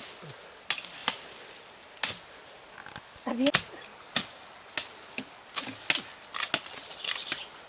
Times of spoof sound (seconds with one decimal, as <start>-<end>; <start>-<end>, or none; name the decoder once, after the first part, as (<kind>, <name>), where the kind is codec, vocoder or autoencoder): none

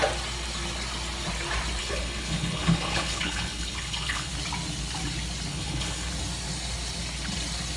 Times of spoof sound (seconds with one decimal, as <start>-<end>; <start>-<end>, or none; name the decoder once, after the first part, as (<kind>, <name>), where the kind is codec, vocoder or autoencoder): 1.8-4.3 (codec, HILCodec); 5.5-6.1

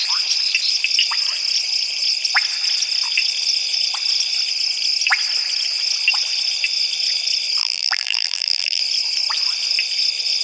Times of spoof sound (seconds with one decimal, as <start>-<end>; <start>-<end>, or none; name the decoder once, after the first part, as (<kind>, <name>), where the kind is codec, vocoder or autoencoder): 7.6-8.8 (vocoder, BigVGAN v2)

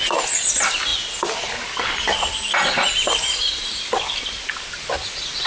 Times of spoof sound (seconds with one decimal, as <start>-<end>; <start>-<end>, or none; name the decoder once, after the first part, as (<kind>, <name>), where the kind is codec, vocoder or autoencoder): none

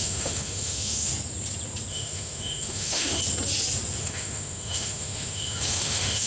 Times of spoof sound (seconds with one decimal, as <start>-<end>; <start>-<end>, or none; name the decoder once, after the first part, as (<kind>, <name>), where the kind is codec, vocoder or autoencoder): 0.0-1.1 (autoencoder, DAC-VAE); 1.9-3.2; 4.0-6.3

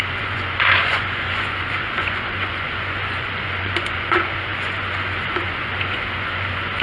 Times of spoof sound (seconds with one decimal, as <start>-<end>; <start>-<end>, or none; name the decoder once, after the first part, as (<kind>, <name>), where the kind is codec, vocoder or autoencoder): 0.0-6.8 (vocoder, Vocos)